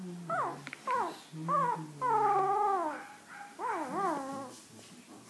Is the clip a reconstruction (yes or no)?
no